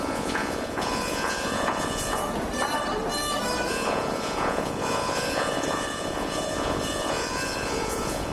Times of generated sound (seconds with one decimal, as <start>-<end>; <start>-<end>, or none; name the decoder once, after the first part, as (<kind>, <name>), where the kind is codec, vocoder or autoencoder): 0.0-2.2 (vocoder, Vocos); 3.7-8.3